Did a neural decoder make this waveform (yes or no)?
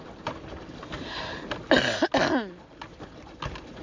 no